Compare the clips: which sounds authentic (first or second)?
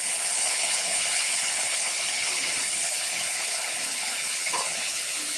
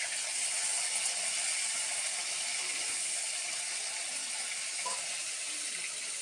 second